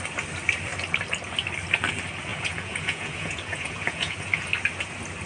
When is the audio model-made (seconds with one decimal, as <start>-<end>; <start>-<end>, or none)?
2.3-4.3